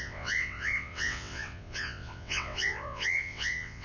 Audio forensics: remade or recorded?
remade